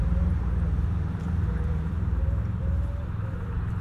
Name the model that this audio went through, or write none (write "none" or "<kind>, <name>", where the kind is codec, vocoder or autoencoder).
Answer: vocoder, BigVGAN v2